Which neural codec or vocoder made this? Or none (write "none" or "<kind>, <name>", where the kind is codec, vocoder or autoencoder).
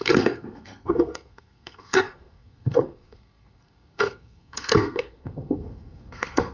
codec, SNAC